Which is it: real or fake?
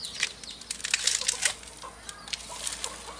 real